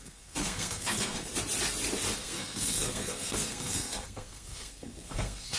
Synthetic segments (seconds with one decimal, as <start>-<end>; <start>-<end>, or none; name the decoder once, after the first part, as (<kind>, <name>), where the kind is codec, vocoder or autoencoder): 0.0-1.3 (codec, SNAC); 2.2-5.6